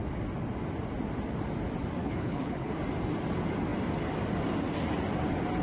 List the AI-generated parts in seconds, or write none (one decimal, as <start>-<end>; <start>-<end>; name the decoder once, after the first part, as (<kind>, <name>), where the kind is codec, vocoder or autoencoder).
2.0-2.7 (codec, HILCodec)